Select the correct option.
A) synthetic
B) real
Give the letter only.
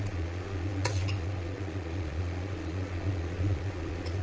A